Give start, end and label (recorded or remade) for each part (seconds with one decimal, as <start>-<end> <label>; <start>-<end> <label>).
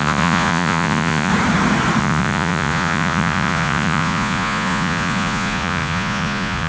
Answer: 0.0-1.3 remade; 1.3-2.0 recorded; 2.0-6.7 remade